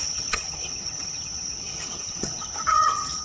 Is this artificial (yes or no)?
yes